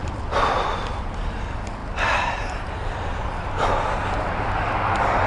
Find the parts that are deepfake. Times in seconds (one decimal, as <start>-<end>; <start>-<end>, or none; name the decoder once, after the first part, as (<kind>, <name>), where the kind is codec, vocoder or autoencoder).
none